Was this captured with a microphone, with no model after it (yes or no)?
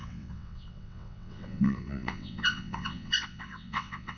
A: no